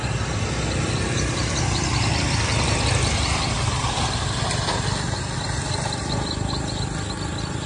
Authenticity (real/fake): real